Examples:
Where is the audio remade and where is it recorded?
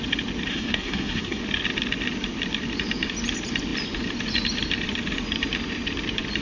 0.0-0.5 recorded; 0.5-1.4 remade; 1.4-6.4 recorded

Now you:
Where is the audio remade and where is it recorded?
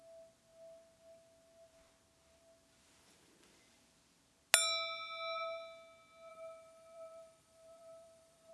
0.0-6.3 recorded; 6.3-8.5 remade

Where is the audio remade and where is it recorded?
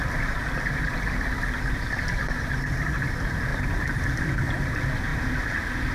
0.0-3.1 remade; 3.1-3.5 recorded; 3.5-4.3 remade; 4.3-5.9 recorded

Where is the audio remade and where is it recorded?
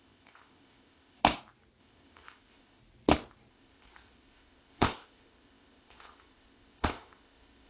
0.0-1.2 remade; 1.2-1.8 recorded; 1.8-2.8 remade; 2.8-3.5 recorded; 3.5-7.7 remade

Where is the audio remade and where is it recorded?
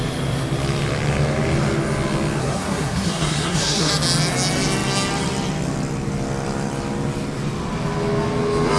0.0-2.4 recorded; 2.4-3.9 remade; 3.9-8.8 recorded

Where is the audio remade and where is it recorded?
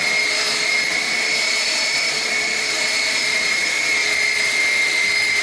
0.0-0.9 recorded; 0.9-3.6 remade; 3.6-5.4 recorded